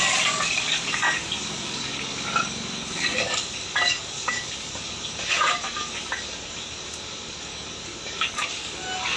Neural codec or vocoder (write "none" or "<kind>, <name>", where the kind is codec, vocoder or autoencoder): codec, DAC